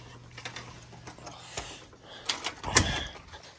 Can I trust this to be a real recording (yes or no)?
yes